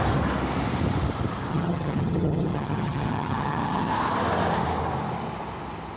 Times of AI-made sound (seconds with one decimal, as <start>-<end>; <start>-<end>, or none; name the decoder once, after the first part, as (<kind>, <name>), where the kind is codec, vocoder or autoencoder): 1.5-3.9 (vocoder, HiFi-GAN)